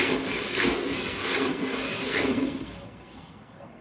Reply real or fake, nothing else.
fake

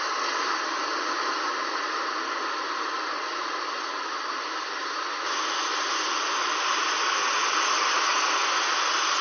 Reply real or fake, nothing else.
real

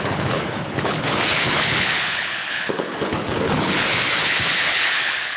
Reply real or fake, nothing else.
fake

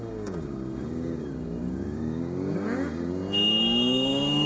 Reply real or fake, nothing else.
fake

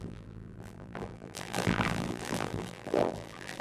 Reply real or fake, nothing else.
fake